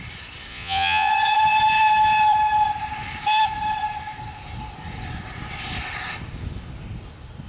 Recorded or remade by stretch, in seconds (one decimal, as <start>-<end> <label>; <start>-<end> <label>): 0.0-0.5 recorded; 0.5-1.1 remade; 1.1-7.5 recorded